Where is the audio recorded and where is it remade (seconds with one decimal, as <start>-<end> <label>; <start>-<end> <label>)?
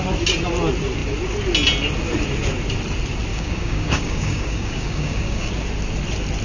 0.0-3.3 recorded; 3.3-5.5 remade; 5.5-6.4 recorded